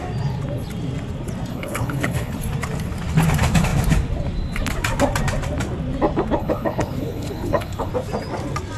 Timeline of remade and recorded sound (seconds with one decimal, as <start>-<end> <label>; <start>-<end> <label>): 0.0-1.5 recorded; 1.5-2.4 remade; 2.4-6.4 recorded; 6.4-7.9 remade; 7.9-8.8 recorded